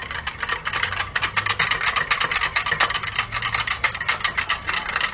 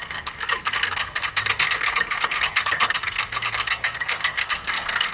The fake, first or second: second